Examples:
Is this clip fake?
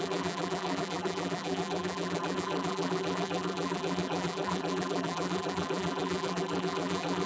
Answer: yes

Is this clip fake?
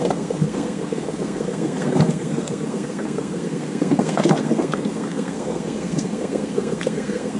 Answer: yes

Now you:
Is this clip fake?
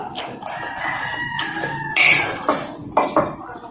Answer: no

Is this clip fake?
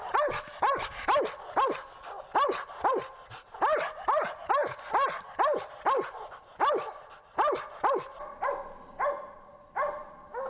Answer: no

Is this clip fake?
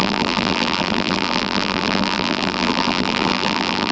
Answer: yes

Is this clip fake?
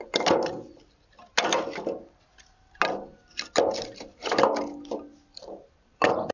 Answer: no